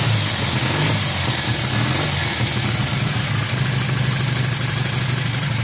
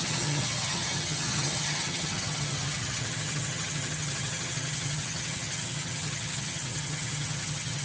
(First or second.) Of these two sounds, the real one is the first